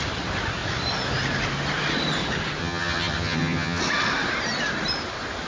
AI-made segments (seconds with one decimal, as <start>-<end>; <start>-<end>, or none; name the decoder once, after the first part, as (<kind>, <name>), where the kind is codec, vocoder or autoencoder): 2.6-3.8 (vocoder, HiFi-GAN)

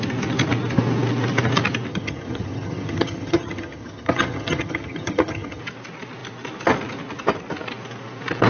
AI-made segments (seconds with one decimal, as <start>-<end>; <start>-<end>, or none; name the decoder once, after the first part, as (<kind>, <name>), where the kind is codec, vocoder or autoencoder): 1.9-5.6 (vocoder, HiFi-GAN)

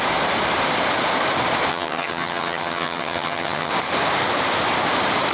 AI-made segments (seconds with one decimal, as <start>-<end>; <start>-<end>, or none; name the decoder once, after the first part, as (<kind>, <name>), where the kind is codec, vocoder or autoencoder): 1.7-3.7 (vocoder, HiFi-GAN)

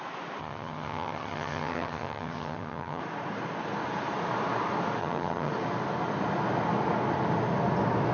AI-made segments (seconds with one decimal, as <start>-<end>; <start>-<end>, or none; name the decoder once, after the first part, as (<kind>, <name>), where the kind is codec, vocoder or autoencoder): 0.4-3.0 (vocoder, HiFi-GAN); 5.0-5.5

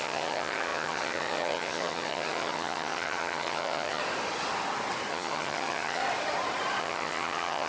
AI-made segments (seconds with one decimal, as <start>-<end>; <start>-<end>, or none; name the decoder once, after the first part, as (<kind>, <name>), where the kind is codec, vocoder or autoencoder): 0.0-4.0 (vocoder, HiFi-GAN); 5.1-6.0; 6.8-7.7

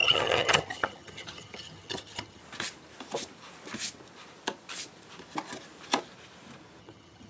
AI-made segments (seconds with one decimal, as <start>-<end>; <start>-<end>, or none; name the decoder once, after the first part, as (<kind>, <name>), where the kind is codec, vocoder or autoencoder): 0.0-2.4 (vocoder, HiFi-GAN); 6.8-7.3

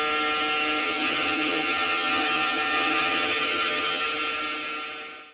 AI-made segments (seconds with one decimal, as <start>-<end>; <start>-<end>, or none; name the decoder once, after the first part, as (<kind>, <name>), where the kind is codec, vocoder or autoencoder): 0.8-4.0 (vocoder, HiFi-GAN)

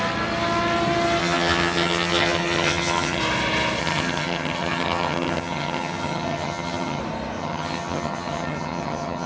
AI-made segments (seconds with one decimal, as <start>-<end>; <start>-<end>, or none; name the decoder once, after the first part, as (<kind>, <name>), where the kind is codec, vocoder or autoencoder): 1.2-3.2 (vocoder, HiFi-GAN); 3.8-7.0; 7.4-9.3